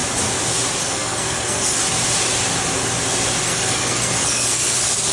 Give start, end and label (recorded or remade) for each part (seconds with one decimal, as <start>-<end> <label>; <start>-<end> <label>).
0.0-0.8 recorded; 0.8-1.8 remade; 1.8-3.4 recorded; 3.4-5.1 remade